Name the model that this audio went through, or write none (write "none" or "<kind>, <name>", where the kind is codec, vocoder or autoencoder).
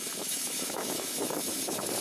autoencoder, DAC-VAE